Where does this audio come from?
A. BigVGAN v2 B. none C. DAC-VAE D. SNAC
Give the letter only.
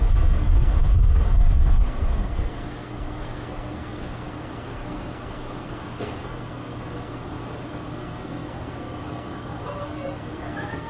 D